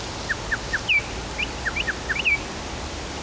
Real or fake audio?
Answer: real